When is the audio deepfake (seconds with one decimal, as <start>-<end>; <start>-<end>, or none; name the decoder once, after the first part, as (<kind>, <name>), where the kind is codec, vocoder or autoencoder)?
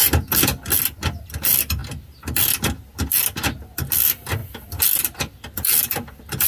none